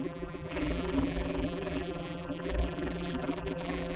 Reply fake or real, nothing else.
fake